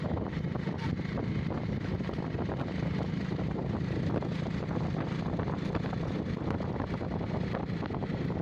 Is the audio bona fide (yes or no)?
yes